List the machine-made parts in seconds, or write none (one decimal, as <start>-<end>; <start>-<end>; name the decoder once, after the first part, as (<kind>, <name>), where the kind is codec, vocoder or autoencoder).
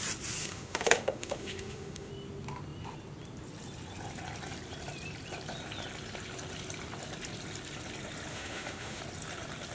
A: 0.4-2.1 (autoencoder, DAC-VAE); 8.3-9.0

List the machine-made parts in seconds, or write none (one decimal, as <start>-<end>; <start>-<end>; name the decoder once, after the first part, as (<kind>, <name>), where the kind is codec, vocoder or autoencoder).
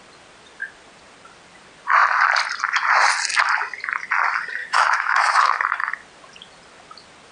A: 4.6-5.6 (autoencoder, DAC-VAE)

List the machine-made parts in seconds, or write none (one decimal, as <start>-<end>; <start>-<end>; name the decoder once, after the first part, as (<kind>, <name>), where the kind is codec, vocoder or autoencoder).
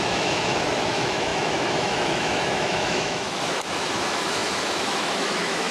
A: 0.0-5.7 (autoencoder, DAC-VAE)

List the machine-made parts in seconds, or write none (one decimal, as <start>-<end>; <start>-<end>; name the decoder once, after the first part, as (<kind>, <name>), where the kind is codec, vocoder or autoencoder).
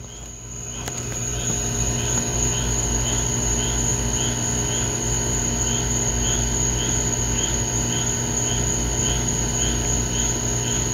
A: none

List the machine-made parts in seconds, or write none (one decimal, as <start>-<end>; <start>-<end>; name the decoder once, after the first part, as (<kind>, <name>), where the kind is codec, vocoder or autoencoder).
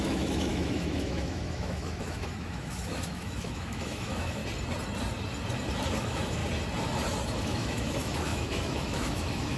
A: 0.0-4.4 (autoencoder, DAC-VAE); 6.0-6.4; 7.4-9.6